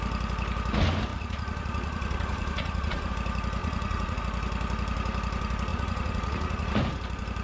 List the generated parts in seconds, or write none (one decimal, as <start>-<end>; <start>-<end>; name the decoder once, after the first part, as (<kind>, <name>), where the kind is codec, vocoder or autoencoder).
1.1-3.1 (vocoder, Vocos); 3.6-4.2; 5.7-6.8